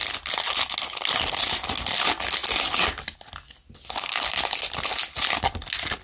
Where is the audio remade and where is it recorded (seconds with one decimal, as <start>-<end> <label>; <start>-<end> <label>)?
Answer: 0.0-6.0 recorded